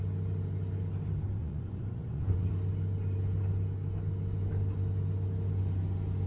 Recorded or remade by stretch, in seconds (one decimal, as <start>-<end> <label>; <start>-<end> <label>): 0.0-1.4 recorded; 1.4-2.5 remade; 2.5-6.3 recorded